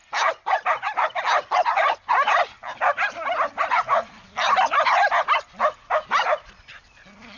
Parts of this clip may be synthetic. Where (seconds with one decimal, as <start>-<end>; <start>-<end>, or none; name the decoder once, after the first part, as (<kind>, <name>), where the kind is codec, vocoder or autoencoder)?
none

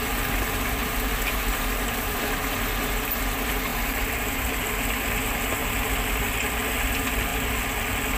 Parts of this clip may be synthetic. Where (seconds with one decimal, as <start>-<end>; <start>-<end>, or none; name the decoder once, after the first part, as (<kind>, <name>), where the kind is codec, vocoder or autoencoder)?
0.8-2.5 (vocoder, BigVGAN v2); 3.7-4.5

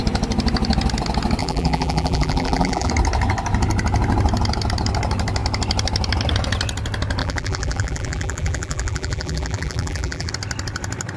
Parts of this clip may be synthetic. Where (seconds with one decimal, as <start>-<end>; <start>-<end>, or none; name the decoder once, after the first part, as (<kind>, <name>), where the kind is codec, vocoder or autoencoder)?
1.4-2.9 (vocoder, BigVGAN v2); 7.2-10.3

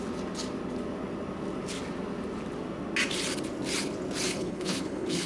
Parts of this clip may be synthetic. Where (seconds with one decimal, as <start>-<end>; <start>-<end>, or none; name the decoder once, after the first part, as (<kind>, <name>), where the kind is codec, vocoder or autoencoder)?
4.3-5.3 (codec, HILCodec)

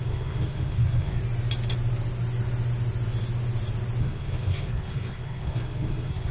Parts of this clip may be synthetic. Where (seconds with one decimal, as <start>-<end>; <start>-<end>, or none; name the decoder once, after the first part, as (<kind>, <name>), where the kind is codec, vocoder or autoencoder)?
0.0-1.2 (codec, SNAC); 4.0-6.3

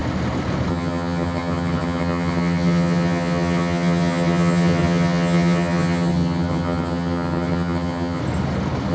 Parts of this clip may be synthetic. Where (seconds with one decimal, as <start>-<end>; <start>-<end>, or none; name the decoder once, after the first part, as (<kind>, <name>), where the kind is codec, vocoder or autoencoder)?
0.7-8.2 (vocoder, HiFi-GAN)